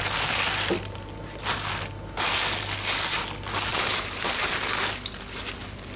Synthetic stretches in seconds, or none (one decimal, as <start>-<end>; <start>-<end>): 3.7-4.5